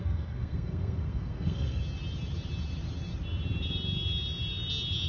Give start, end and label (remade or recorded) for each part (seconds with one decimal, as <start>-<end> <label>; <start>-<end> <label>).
0.0-1.8 remade; 1.8-5.1 recorded